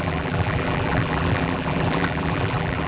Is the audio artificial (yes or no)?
yes